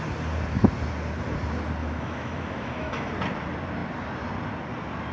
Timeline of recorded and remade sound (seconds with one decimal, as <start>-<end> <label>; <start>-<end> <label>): 0.0-1.8 recorded; 1.8-3.1 remade; 3.1-5.1 recorded